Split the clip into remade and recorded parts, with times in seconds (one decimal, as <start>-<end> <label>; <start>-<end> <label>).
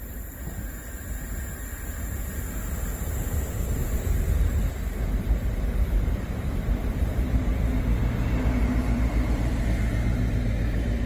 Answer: 0.0-2.9 recorded; 2.9-7.8 remade; 7.8-8.6 recorded; 8.6-9.6 remade; 9.6-11.1 recorded